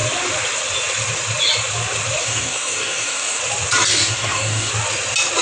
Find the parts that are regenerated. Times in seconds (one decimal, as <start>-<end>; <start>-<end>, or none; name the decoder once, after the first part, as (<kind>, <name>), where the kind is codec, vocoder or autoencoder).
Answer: 2.2-3.4 (codec, DAC); 3.9-4.7